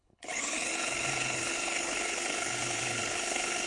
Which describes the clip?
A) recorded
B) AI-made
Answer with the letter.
B